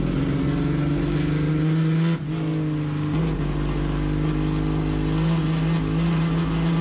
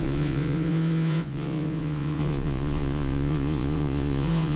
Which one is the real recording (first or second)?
first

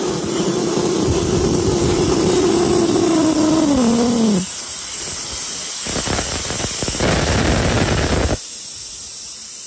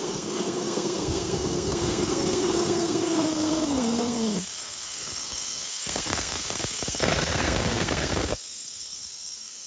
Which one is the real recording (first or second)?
first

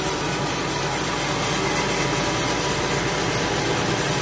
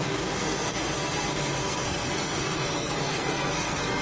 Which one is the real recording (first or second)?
first